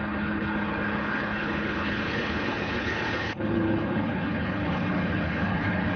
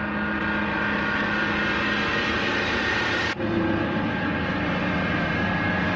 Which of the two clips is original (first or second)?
second